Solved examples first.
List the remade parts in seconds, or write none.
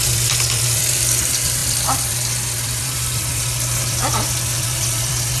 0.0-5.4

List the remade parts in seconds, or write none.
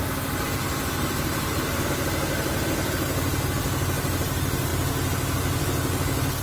none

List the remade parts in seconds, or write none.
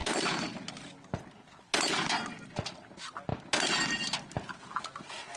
0.0-0.9